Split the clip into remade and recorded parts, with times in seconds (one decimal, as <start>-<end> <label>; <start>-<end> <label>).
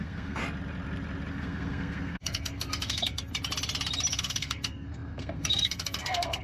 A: 0.0-0.4 remade; 0.4-1.3 recorded; 1.3-3.3 remade; 3.3-4.1 recorded; 4.1-6.4 remade